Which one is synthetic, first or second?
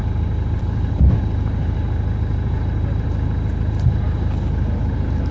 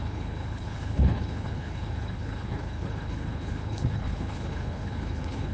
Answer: second